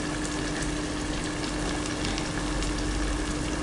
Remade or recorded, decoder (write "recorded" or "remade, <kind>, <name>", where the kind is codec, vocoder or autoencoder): recorded